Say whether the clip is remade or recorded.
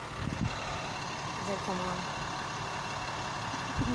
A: recorded